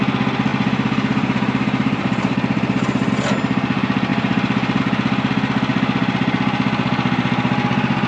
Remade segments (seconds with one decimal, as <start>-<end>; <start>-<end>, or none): 0.5-3.1; 4.1-4.8